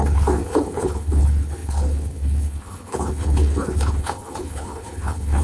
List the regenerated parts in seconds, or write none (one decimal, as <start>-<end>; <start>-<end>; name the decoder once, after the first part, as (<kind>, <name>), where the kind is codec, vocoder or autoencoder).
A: 0.0-5.4 (codec, HILCodec)